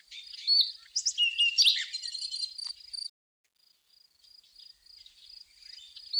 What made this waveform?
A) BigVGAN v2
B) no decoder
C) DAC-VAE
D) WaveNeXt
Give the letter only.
B